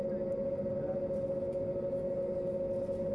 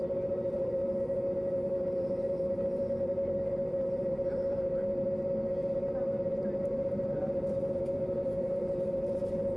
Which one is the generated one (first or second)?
second